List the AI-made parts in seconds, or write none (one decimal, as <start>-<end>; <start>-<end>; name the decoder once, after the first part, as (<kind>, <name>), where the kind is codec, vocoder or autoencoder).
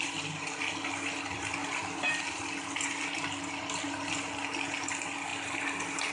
none